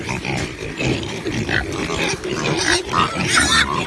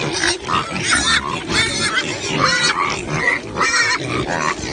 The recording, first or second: second